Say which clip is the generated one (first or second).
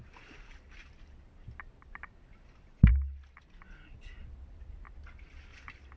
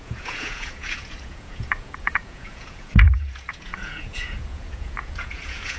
second